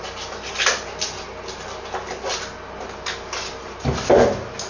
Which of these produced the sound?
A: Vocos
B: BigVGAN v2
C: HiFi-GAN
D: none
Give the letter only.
D